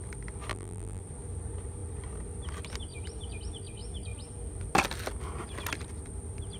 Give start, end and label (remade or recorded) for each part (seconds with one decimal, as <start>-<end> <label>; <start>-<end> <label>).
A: 0.0-0.5 recorded; 0.5-1.0 remade; 1.0-6.6 recorded